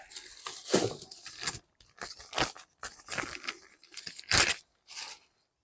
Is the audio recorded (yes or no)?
yes